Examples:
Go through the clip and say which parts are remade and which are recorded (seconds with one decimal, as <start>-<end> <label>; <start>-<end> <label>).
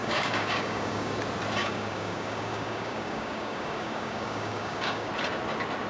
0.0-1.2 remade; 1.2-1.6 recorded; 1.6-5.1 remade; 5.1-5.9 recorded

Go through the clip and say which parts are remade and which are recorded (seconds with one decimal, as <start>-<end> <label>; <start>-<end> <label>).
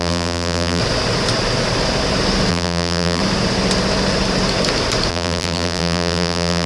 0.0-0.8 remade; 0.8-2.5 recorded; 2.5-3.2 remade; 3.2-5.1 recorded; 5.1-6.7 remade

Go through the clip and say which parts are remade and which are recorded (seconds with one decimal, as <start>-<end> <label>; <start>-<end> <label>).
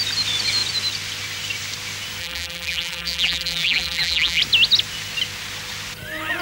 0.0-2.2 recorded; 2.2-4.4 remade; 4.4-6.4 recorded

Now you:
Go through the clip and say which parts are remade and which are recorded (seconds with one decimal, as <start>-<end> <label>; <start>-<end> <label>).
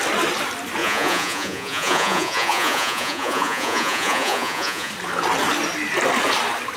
0.0-0.8 recorded; 0.8-4.9 remade; 4.9-6.8 recorded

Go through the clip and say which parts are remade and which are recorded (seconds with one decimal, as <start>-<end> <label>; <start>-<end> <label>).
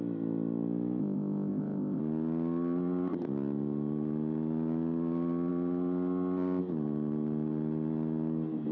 0.0-1.0 recorded; 1.0-2.0 remade; 2.0-8.7 recorded